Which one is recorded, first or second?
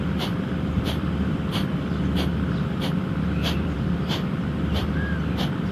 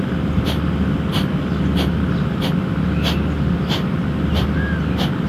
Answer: second